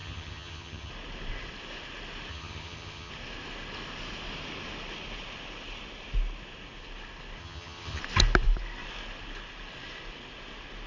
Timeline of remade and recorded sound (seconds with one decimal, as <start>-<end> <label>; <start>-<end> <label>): 0.0-0.9 remade; 0.9-2.3 recorded; 2.3-3.1 remade; 3.1-7.4 recorded; 7.4-8.0 remade; 8.0-10.9 recorded